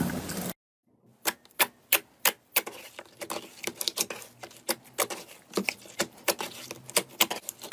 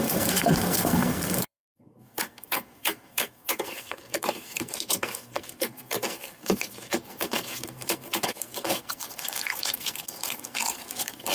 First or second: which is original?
first